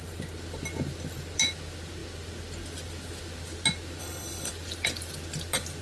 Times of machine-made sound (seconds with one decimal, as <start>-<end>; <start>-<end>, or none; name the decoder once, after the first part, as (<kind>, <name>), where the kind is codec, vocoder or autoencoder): 4.0-4.5 (codec, HILCodec)